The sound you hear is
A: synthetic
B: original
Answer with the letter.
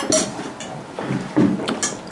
B